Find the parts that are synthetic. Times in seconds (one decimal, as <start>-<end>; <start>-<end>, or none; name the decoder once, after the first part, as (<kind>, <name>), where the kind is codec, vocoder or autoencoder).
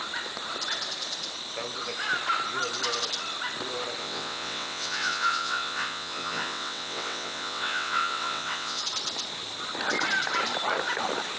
4.0-8.8 (vocoder, WaveNeXt)